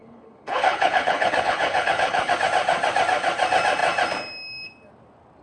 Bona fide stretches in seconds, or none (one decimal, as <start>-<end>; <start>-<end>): 2.3-5.4